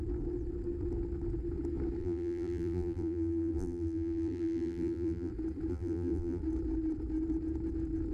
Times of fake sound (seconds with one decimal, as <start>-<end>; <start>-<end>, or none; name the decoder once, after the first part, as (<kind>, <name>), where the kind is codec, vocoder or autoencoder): 2.0-5.3 (vocoder, BigVGAN v2); 5.7-6.4